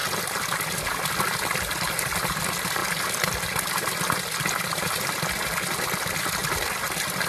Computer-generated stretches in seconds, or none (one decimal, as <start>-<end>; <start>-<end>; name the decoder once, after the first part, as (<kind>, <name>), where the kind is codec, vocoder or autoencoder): 1.1-2.8 (vocoder, BigVGAN v2); 4.7-6.4